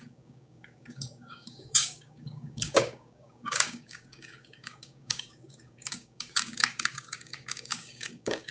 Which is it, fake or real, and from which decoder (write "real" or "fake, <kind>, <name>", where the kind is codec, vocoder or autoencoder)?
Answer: fake, codec, DAC